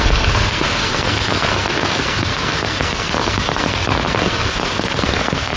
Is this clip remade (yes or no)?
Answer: yes